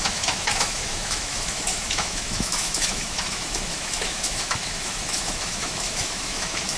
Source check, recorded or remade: remade